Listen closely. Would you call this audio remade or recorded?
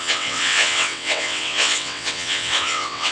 remade